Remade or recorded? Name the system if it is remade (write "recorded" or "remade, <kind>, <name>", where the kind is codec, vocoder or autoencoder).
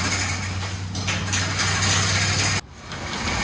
recorded